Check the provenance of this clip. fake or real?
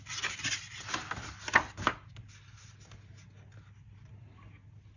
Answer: real